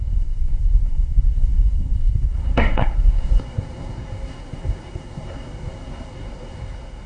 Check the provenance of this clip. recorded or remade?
remade